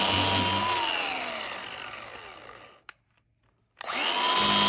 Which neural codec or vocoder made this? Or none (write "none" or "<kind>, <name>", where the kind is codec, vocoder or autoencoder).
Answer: none